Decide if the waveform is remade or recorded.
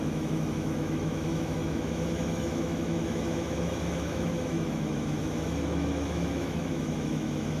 remade